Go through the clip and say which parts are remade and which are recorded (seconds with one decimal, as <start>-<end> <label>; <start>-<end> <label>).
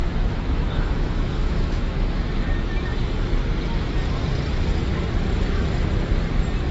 0.0-2.2 remade; 2.2-6.7 recorded